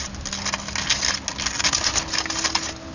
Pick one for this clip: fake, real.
real